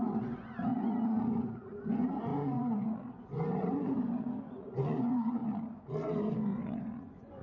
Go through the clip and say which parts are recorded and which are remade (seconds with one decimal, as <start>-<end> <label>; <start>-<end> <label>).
0.0-0.7 remade; 0.7-1.4 recorded; 1.4-5.4 remade; 5.4-6.4 recorded; 6.4-7.4 remade